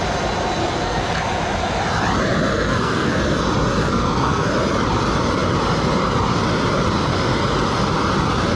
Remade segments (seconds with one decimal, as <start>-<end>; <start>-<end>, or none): 0.6-1.1; 2.5-3.2; 3.8-4.5